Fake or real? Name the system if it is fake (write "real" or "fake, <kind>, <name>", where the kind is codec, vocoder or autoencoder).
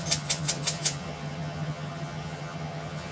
fake, vocoder, HiFi-GAN